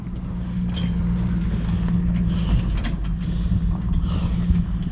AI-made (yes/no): no